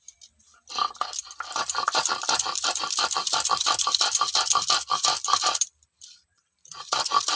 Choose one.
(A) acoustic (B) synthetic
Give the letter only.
B